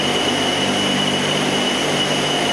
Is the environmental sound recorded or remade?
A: recorded